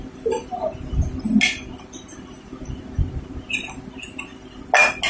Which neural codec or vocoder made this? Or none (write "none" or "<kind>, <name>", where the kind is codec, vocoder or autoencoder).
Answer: none